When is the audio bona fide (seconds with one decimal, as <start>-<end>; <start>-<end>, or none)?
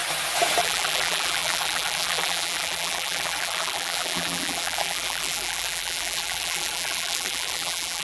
0.0-0.6